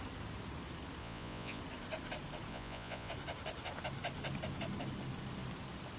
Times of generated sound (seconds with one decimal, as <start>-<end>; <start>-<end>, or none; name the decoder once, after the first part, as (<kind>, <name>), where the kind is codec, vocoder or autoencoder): 1.0-1.6 (vocoder, Vocos); 2.5-3.1